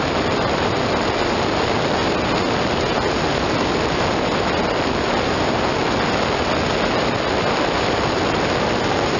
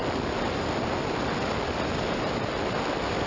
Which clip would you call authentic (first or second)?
first